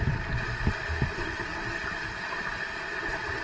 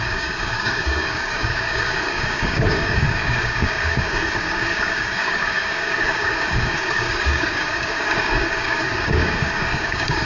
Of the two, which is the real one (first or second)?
first